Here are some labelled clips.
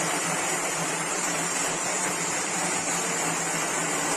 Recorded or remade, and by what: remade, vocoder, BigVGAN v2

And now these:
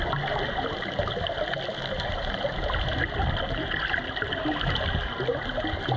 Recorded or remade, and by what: recorded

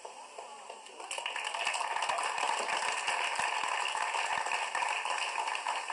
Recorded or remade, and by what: recorded